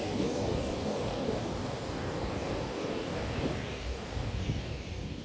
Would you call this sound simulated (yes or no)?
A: yes